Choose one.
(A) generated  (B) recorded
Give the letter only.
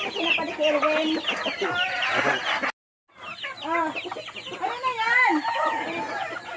B